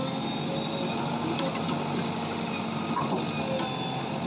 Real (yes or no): yes